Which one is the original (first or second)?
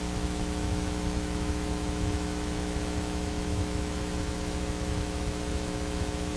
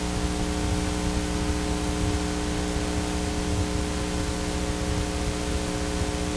second